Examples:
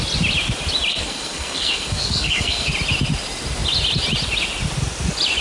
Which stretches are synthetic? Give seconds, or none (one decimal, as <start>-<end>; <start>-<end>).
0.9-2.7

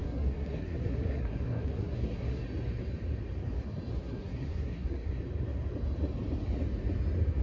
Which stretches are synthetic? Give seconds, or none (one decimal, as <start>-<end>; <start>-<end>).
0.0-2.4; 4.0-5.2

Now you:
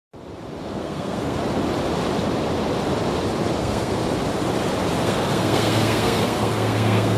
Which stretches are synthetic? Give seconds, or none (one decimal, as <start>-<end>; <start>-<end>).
0.7-1.4; 3.6-4.0; 5.0-7.2

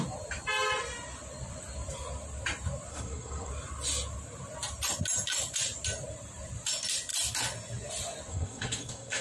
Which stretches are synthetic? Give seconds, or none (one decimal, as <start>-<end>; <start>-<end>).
2.9-3.5; 8.3-9.2

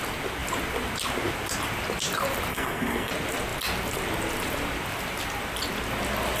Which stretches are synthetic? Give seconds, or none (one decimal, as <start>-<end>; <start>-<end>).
2.5-3.1